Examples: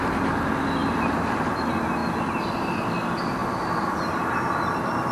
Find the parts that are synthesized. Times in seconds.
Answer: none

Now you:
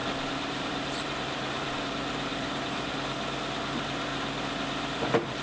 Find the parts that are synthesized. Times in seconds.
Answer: 0.0-1.8; 2.3-2.9

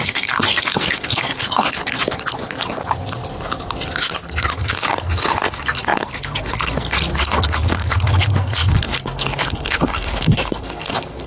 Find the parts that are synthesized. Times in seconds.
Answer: 0.0-1.8; 4.6-11.3

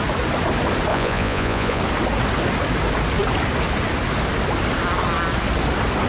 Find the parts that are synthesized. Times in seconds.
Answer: 0.9-1.8

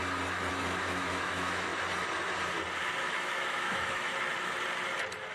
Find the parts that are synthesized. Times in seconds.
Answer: 0.5-1.7; 3.0-4.1

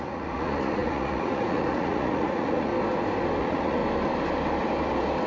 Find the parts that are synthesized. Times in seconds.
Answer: 0.0-2.7; 3.4-3.8